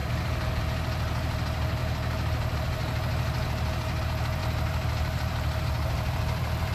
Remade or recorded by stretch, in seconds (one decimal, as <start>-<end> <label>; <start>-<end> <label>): 0.0-0.6 remade; 0.6-4.4 recorded; 4.4-6.7 remade